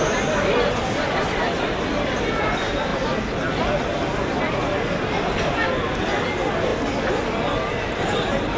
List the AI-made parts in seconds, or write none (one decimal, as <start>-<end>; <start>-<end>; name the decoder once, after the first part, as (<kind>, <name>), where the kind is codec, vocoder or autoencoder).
none